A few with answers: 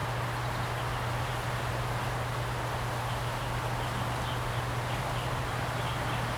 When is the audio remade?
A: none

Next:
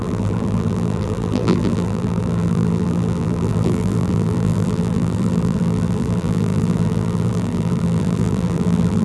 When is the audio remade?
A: 0.0-9.0 (vocoder, BigVGAN v2)